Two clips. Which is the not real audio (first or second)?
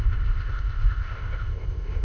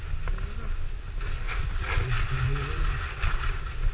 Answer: first